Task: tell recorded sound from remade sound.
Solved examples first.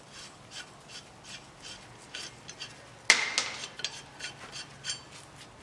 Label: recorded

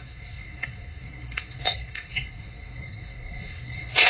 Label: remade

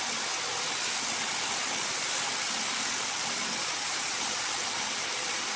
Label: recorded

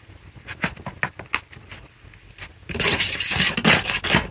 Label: recorded